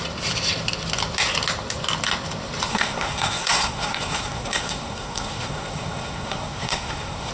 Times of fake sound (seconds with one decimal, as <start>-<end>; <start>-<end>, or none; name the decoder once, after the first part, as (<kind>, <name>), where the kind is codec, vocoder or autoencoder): 2.7-7.3 (codec, SNAC)